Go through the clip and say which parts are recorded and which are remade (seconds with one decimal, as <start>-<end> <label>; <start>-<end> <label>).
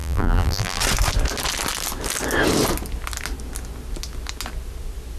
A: 0.0-0.8 remade; 0.8-5.2 recorded